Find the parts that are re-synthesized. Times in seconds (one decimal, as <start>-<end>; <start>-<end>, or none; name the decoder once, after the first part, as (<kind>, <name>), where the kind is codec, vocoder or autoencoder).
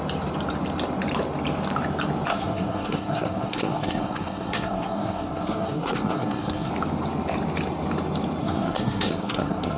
2.3-6.7 (codec, SNAC); 8.4-9.8